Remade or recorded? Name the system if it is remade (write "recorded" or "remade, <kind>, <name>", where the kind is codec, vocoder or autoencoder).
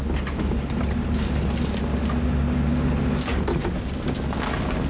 recorded